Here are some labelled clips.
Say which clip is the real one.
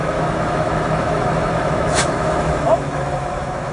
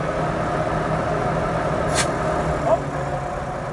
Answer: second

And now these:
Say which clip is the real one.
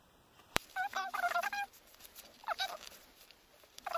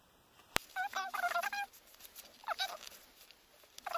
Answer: second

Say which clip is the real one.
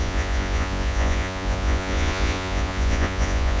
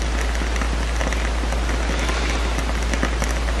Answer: second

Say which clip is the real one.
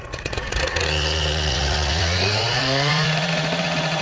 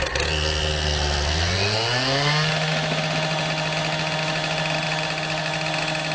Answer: second